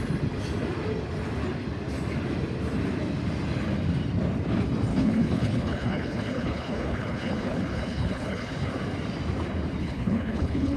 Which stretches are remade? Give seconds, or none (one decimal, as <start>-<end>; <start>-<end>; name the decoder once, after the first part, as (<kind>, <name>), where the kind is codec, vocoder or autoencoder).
4.9-8.7 (codec, HILCodec); 9.8-10.8